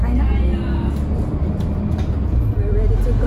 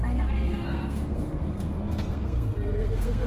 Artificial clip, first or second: second